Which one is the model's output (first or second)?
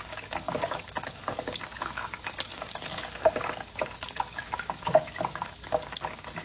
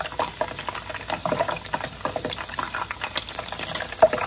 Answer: first